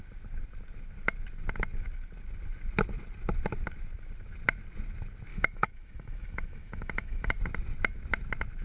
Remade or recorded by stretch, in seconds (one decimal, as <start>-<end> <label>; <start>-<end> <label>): 0.0-5.3 recorded; 5.3-7.4 remade; 7.4-8.6 recorded

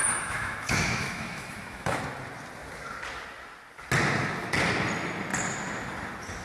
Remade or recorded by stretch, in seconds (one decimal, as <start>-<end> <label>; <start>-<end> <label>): 0.0-2.0 remade; 2.0-6.4 recorded

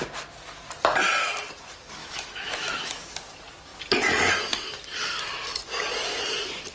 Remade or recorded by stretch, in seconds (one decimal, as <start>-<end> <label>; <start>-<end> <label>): 0.0-2.0 recorded; 2.0-3.1 remade; 3.1-6.7 recorded

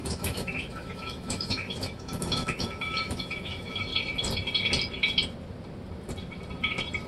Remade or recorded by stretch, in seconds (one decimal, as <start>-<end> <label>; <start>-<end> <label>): 0.0-3.9 remade; 3.9-7.1 recorded

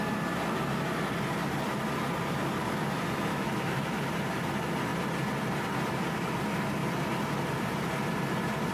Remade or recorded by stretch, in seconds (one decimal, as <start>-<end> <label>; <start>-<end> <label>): 0.0-3.3 recorded; 3.3-4.1 remade; 4.1-8.7 recorded